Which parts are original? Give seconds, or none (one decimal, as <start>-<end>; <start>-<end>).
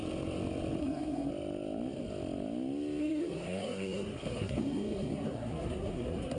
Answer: 0.0-0.8; 1.3-3.0